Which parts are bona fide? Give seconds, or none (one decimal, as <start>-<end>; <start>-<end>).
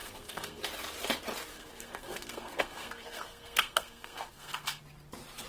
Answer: 0.6-1.5; 4.8-5.5